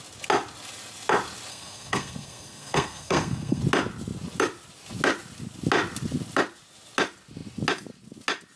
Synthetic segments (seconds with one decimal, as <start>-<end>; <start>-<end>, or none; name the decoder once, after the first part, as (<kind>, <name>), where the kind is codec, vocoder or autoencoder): 1.5-3.6 (codec, SNAC)